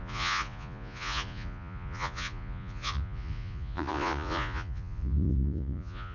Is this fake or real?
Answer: fake